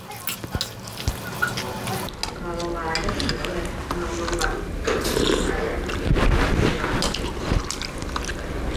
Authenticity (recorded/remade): recorded